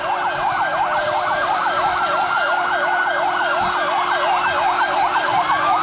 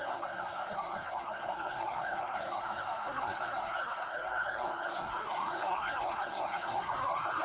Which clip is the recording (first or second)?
first